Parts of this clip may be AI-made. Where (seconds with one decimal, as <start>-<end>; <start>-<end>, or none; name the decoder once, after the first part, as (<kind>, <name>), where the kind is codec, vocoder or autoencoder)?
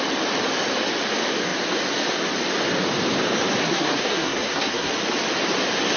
3.6-4.9 (codec, SNAC)